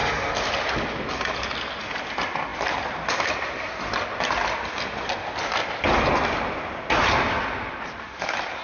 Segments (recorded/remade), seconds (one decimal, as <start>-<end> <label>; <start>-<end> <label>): 0.0-8.6 recorded